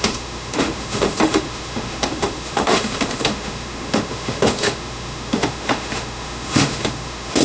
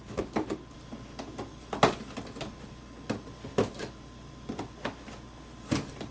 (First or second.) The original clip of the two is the second